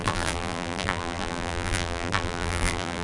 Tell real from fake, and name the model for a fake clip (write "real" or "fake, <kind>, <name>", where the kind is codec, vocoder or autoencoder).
fake, vocoder, BigVGAN v2